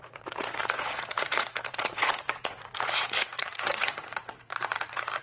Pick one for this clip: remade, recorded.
remade